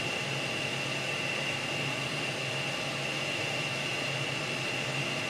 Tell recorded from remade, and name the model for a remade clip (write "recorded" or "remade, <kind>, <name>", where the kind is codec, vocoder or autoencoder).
recorded